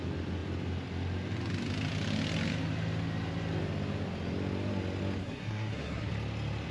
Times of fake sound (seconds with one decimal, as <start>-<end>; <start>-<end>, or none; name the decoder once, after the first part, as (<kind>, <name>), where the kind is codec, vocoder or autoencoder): 5.2-6.1 (codec, SNAC)